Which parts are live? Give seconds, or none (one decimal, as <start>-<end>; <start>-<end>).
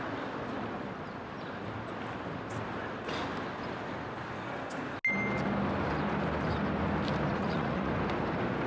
0.0-7.3; 7.9-8.7